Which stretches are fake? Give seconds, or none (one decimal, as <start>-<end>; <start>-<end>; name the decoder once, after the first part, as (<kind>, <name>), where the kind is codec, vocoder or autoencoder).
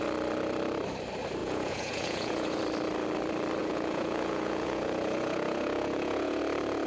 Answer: 1.4-2.6 (vocoder, Vocos); 3.6-6.4